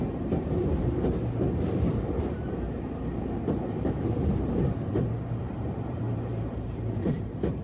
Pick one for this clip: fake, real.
fake